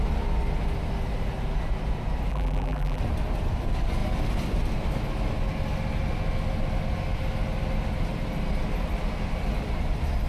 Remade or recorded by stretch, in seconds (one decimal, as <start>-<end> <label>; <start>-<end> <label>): 0.0-2.3 recorded; 2.3-3.0 remade; 3.0-10.3 recorded